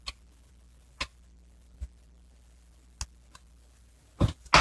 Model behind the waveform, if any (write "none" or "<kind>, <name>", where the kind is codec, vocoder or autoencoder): none